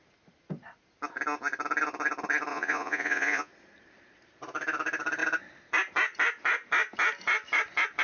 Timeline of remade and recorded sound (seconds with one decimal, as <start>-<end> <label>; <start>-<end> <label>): 0.0-2.5 recorded; 2.5-3.5 remade; 3.5-8.0 recorded